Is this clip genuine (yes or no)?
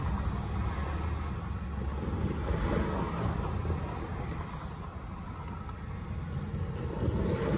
yes